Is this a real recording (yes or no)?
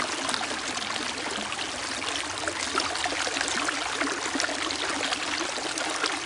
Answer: yes